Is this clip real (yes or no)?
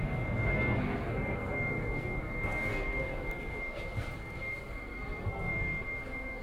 no